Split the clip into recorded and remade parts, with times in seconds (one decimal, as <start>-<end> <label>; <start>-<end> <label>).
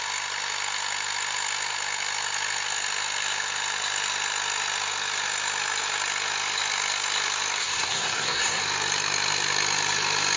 0.0-7.6 recorded; 7.6-8.6 remade; 8.6-10.4 recorded